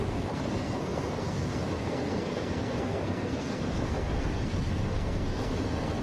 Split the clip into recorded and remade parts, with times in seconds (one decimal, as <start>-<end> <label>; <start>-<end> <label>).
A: 0.0-6.0 remade